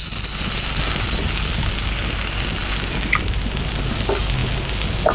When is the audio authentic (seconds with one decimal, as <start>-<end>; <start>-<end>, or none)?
0.0-5.1